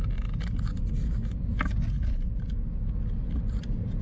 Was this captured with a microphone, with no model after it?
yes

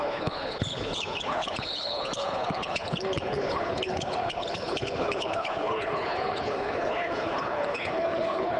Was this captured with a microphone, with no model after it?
no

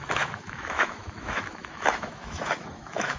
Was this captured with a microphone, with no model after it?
no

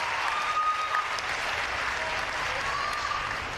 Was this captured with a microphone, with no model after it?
yes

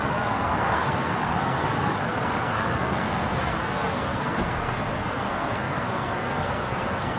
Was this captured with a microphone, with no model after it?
no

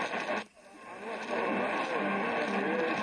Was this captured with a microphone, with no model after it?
yes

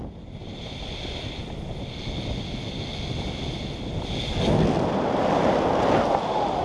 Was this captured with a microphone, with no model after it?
yes